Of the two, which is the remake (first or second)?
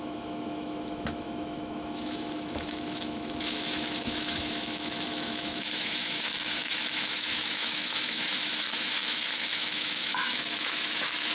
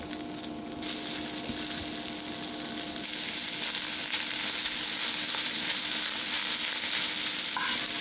first